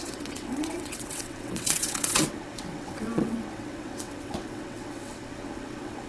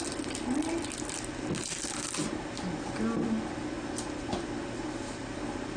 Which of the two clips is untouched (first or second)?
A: second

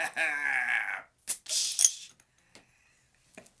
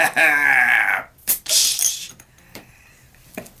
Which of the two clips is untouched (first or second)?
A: first